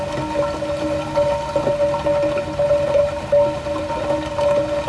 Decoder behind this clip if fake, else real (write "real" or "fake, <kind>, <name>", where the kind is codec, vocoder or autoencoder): real